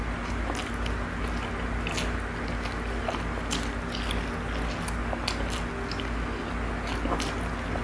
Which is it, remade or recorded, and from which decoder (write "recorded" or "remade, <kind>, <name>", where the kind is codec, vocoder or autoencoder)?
recorded